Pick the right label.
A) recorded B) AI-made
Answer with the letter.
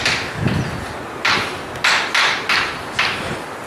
A